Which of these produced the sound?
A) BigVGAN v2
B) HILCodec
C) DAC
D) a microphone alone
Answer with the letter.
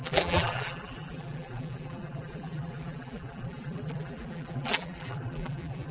A